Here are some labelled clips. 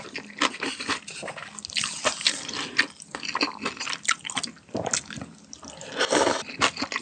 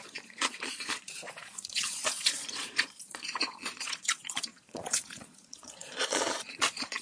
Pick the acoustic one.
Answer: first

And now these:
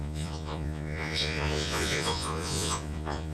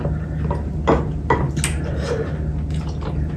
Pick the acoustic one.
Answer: second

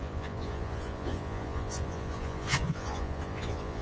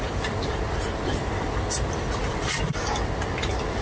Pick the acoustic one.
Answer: second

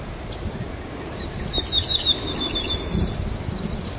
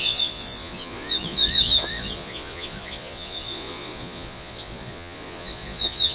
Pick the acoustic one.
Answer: first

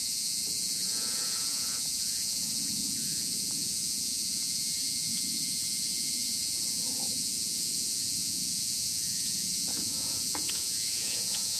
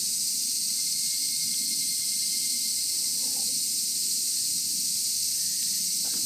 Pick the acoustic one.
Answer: second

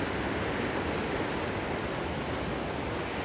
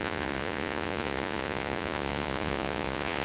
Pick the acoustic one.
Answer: first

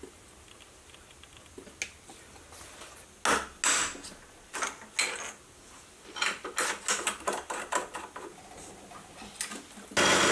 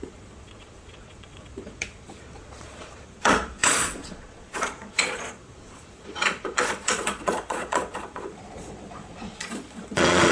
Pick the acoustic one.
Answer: first